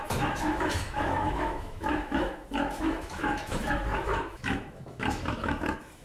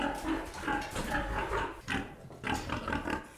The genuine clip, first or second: second